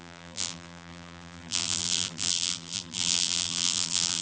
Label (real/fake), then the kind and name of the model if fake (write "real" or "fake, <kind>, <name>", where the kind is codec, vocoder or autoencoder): fake, vocoder, BigVGAN v2